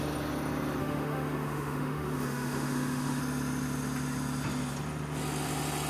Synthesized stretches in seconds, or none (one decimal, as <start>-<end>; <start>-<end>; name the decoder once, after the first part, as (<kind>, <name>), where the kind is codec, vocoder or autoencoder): 0.8-3.2 (autoencoder, DAC-VAE)

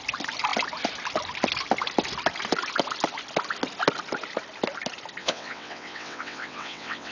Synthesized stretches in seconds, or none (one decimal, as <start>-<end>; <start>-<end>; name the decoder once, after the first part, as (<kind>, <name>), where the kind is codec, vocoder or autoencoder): 5.2-7.1 (vocoder, WaveNeXt)

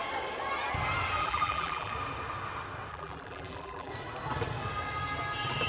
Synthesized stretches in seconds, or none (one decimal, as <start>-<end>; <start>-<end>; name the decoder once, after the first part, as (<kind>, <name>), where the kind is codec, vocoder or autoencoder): 1.2-1.9 (vocoder, BigVGAN v2); 2.9-3.9

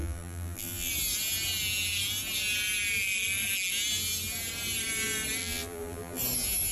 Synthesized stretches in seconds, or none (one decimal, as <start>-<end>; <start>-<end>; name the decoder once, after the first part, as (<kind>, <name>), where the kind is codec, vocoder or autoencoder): 0.0-0.9 (vocoder, BigVGAN v2); 5.4-6.2